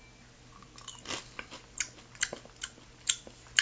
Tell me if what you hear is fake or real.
real